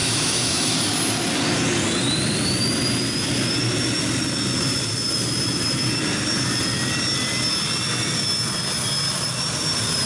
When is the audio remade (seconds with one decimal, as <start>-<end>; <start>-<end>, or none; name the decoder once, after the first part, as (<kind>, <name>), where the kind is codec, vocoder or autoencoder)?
0.0-0.7 (autoencoder, DAC-VAE)